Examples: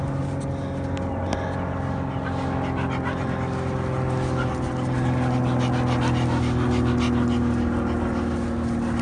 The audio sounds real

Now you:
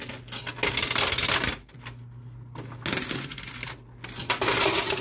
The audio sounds real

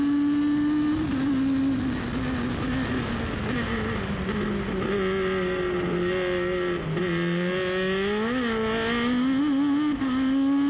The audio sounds real